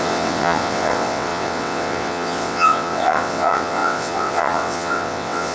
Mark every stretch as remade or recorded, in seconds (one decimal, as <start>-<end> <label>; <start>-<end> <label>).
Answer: 0.0-5.5 remade